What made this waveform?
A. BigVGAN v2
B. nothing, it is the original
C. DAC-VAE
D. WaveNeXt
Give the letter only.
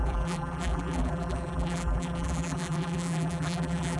A